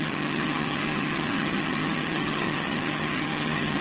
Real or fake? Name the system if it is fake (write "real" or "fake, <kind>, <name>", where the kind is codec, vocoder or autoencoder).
fake, vocoder, HiFi-GAN